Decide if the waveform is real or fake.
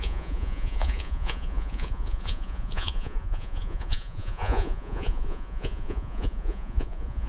fake